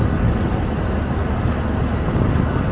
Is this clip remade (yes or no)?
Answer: no